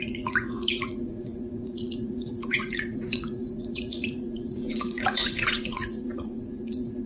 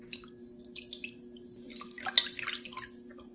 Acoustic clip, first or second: second